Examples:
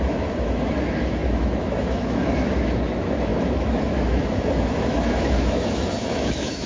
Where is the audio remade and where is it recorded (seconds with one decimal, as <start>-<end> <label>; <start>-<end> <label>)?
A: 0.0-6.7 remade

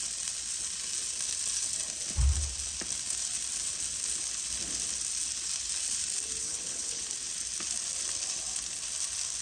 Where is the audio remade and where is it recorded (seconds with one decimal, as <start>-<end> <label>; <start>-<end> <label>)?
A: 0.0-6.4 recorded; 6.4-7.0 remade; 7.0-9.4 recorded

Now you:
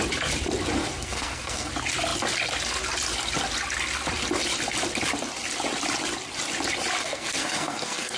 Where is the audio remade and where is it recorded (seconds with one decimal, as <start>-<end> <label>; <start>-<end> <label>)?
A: 0.0-0.8 recorded; 0.8-1.7 remade; 1.7-7.0 recorded; 7.0-8.2 remade